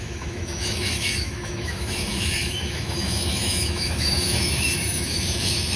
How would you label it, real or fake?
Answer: fake